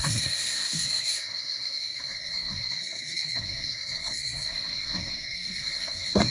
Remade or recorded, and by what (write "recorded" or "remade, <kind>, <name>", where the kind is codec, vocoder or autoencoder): remade, codec, SNAC